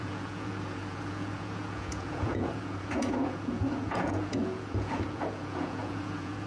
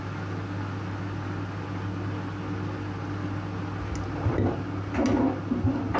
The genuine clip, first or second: second